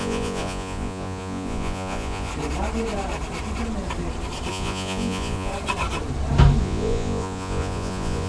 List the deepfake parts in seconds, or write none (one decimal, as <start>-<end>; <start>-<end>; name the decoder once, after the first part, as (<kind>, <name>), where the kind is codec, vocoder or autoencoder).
0.0-2.3 (vocoder, Vocos); 4.5-5.5; 6.6-8.3